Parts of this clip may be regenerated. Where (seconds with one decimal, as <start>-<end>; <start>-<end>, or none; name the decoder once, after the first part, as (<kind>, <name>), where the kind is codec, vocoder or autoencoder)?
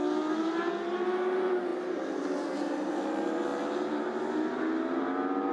none